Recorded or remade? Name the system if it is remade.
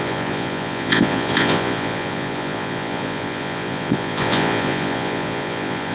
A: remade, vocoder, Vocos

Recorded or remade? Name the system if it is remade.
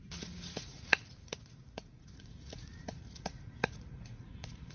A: remade, vocoder, Vocos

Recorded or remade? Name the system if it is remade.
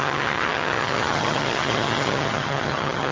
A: remade, vocoder, HiFi-GAN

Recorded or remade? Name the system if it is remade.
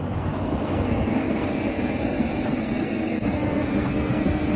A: remade, codec, SNAC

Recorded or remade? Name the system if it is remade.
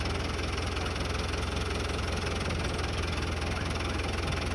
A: recorded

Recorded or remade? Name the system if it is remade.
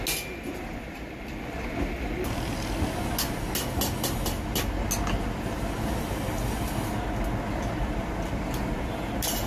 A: recorded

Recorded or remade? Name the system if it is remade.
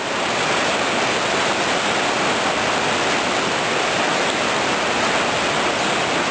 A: recorded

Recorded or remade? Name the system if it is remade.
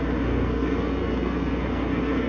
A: remade, codec, SNAC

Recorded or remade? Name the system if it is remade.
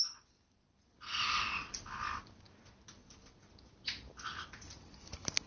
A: recorded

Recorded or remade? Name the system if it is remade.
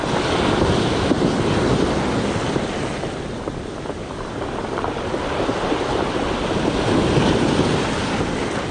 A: recorded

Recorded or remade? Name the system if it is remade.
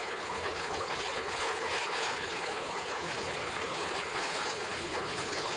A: remade, codec, HILCodec